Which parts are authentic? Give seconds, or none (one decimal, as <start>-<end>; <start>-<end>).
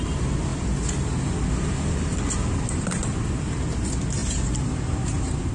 0.0-4.2